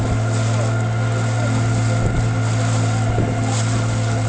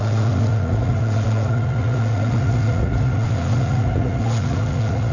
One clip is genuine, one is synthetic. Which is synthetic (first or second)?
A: second